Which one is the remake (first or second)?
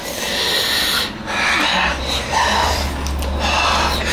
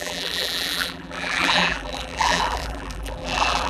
second